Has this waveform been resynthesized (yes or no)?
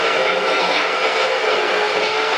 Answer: yes